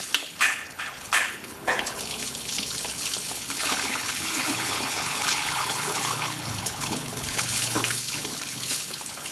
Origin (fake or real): fake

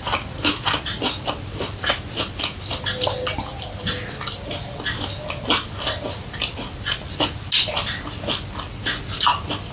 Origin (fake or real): real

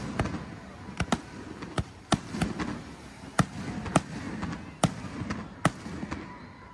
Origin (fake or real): real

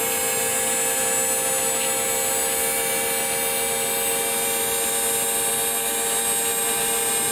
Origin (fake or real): real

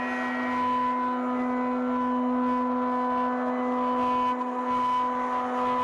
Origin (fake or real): real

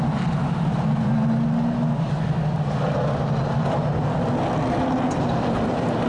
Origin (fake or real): real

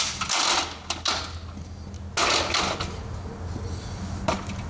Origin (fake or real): real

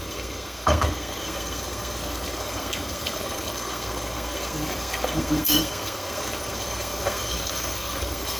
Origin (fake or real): fake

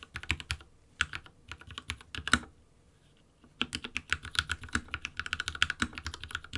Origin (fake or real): real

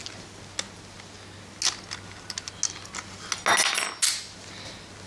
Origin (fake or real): real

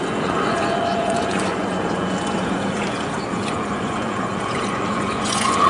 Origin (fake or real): fake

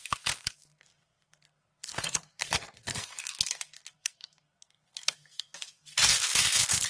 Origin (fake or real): fake